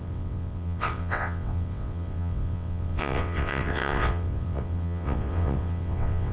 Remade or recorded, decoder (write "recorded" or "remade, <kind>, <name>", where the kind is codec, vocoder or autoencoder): remade, vocoder, WaveNeXt